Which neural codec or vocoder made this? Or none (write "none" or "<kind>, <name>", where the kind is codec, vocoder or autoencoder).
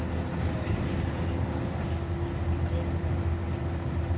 none